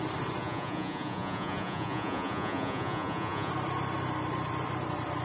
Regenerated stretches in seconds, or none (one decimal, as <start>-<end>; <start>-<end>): 0.4-3.5